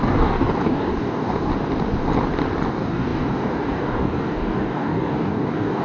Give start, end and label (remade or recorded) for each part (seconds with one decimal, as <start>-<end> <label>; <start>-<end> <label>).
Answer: 0.0-1.5 remade; 1.5-2.7 recorded; 2.7-5.8 remade